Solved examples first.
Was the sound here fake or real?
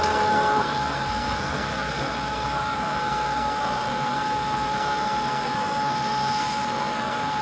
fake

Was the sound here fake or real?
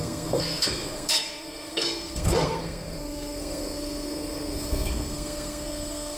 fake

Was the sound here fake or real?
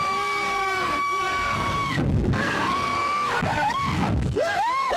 fake